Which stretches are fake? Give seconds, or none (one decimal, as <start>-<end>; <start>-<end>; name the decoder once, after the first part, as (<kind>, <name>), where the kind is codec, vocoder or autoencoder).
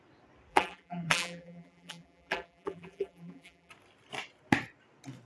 0.5-3.7 (vocoder, BigVGAN v2)